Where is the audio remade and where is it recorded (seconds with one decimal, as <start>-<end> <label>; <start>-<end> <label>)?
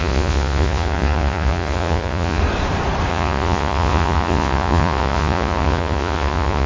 0.0-2.4 remade; 2.4-3.1 recorded; 3.1-6.7 remade